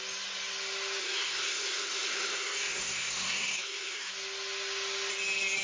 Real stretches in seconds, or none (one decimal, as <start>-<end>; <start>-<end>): 0.0-1.0; 4.1-5.6